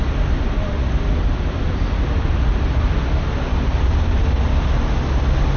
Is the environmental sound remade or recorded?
recorded